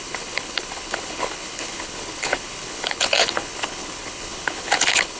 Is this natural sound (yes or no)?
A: no